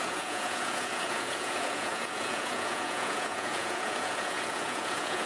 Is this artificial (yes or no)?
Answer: yes